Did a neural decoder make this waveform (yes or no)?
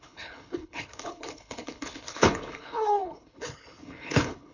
yes